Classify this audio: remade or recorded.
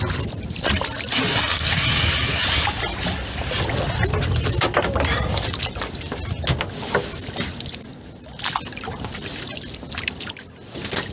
recorded